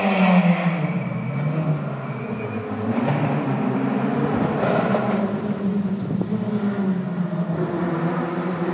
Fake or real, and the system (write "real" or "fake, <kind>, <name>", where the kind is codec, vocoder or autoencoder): real